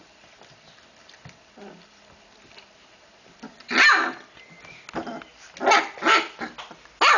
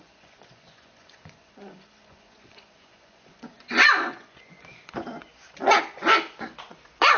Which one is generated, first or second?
second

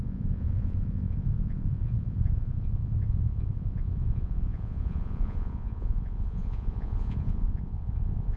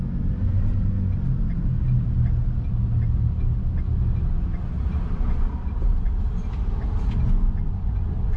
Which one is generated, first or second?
first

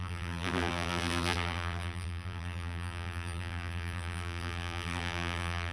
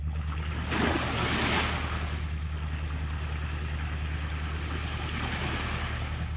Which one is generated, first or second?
first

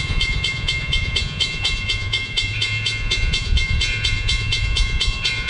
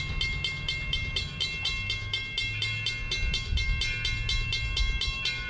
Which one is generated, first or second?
first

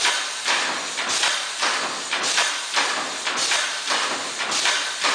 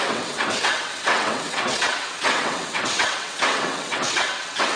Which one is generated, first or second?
second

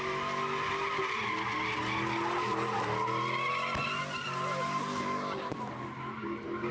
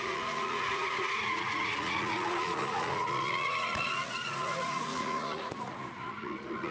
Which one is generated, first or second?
second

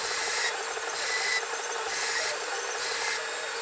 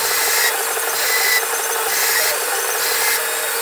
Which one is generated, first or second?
first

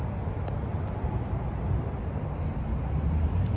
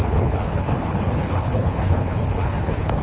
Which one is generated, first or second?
second